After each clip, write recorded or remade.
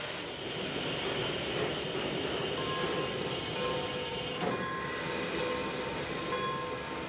recorded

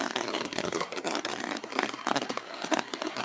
remade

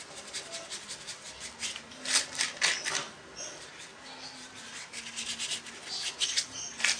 recorded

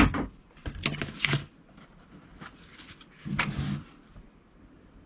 recorded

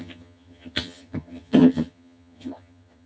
remade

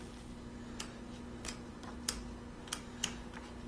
recorded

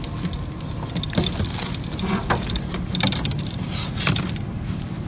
recorded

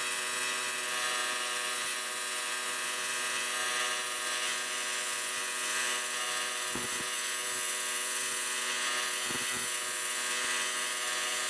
remade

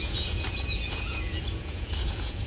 remade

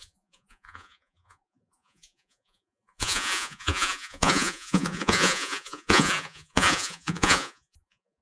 remade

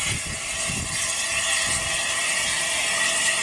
recorded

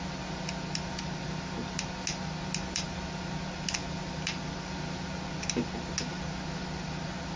recorded